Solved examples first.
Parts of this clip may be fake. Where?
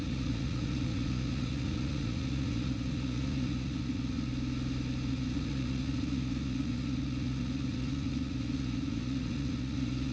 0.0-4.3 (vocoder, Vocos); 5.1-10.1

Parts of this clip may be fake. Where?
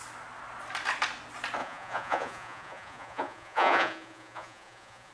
1.6-5.1 (vocoder, Vocos)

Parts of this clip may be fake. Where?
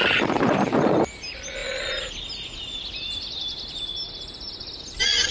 0.0-1.0 (vocoder, BigVGAN v2)